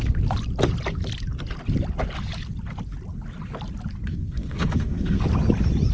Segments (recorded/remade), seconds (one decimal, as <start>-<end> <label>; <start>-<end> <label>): 0.0-4.1 recorded; 4.1-5.2 remade; 5.2-5.9 recorded

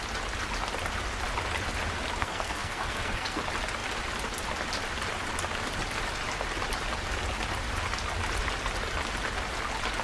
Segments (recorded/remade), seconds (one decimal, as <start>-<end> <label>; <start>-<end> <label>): 0.0-2.2 recorded; 2.2-3.4 remade; 3.4-10.0 recorded